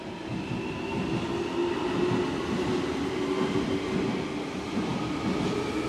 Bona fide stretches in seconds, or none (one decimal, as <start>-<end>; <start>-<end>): 0.0-5.9